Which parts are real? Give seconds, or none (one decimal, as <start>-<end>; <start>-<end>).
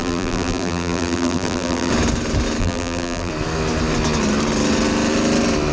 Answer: 1.9-2.6; 3.3-5.7